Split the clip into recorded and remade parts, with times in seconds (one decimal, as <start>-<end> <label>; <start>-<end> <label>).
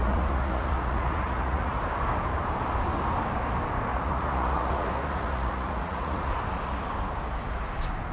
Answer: 0.0-1.8 remade; 1.8-3.9 recorded; 3.9-6.3 remade; 6.3-8.1 recorded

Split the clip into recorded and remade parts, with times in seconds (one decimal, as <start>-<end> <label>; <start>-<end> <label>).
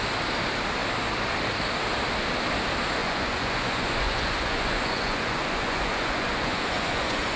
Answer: 0.0-3.0 recorded; 3.0-7.4 remade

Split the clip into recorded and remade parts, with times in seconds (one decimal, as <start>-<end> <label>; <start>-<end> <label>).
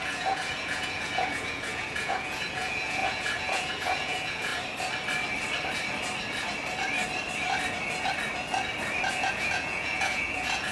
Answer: 0.0-4.5 remade; 4.5-9.1 recorded; 9.1-10.7 remade